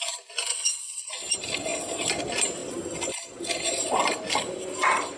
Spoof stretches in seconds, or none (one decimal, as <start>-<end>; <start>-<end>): 0.5-1.1